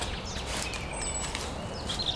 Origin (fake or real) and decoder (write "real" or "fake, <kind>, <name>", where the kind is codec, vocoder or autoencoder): real